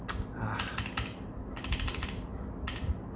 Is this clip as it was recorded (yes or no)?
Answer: yes